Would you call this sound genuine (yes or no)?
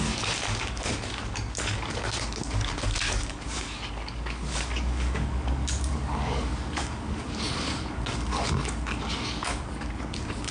no